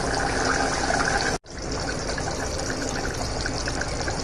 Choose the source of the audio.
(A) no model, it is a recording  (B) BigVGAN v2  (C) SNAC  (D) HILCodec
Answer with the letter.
A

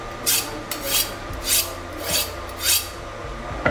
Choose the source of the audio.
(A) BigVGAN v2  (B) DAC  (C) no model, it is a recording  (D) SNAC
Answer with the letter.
C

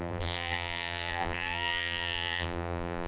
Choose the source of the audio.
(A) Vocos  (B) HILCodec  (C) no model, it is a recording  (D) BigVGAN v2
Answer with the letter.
D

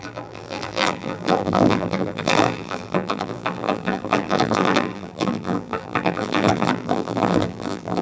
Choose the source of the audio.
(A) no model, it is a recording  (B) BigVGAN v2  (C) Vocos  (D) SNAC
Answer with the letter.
B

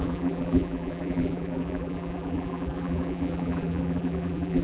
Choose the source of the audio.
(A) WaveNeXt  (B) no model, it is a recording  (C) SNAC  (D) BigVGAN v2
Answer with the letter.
D